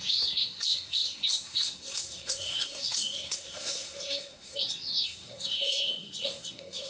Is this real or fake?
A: fake